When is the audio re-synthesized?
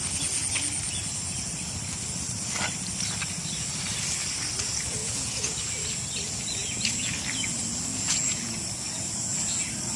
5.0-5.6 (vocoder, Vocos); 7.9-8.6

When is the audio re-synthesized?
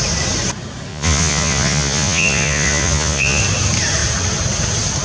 0.9-3.4 (vocoder, Vocos)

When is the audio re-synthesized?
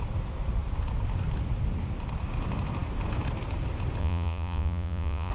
4.0-5.3 (vocoder, Vocos)